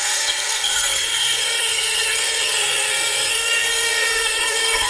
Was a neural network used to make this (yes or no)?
yes